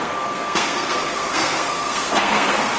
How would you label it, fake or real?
fake